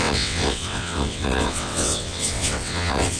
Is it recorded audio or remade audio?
remade